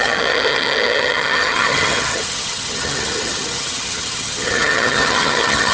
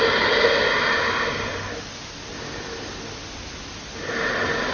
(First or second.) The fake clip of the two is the first